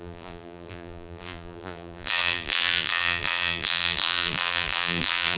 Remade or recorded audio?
remade